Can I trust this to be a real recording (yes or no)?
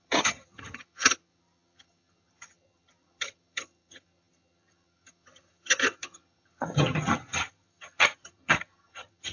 no